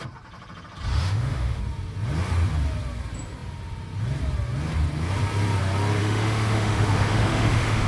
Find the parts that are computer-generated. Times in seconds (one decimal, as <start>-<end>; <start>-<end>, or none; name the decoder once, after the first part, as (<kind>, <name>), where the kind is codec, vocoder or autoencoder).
0.9-1.6 (autoencoder, DAC-VAE); 6.0-7.9